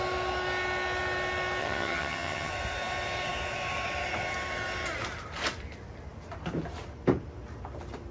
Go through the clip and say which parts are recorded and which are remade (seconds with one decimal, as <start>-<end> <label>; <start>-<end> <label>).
0.0-1.6 recorded; 1.6-2.5 remade; 2.5-8.1 recorded